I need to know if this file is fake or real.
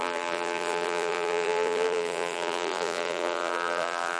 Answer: fake